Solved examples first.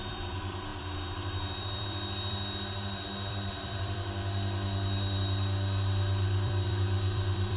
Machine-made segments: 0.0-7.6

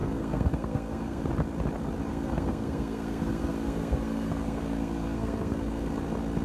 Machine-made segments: 0.0-1.3; 2.1-5.9